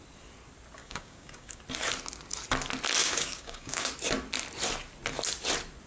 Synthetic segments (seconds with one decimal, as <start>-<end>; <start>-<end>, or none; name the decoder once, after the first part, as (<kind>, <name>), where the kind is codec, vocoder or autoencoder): 0.8-1.6 (codec, DAC); 3.0-3.9